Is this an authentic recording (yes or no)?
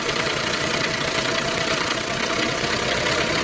no